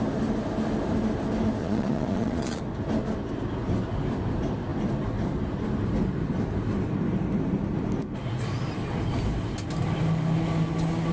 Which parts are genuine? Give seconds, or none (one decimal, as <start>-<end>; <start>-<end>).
0.0-1.6; 2.6-11.1